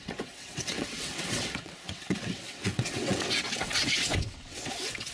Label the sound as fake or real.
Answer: fake